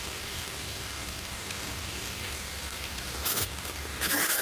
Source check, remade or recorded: remade